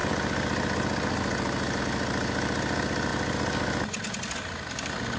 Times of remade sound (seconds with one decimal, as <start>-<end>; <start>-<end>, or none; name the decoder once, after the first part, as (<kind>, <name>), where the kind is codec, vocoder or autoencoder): none